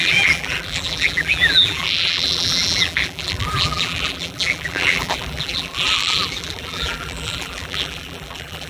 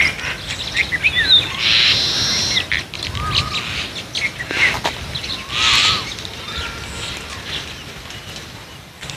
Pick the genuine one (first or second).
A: second